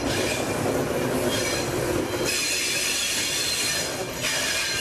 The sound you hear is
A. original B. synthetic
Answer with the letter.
A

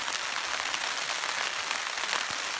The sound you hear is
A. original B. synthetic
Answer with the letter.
A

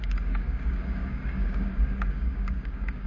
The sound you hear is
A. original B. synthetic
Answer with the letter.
B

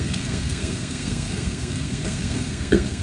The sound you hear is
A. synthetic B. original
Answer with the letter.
A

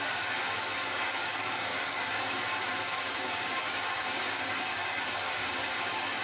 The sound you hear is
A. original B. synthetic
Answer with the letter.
B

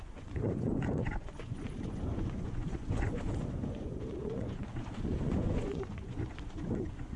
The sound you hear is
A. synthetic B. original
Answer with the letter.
A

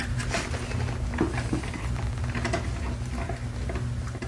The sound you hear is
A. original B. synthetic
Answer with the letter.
A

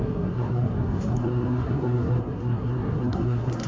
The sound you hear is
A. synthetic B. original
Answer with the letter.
A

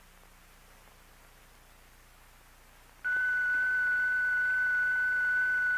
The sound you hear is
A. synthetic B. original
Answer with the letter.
B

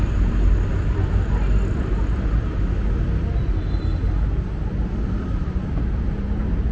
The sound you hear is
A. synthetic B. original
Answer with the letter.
B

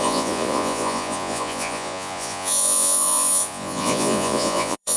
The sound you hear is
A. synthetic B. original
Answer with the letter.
A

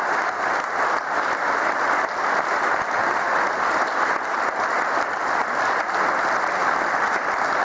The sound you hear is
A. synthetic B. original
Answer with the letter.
B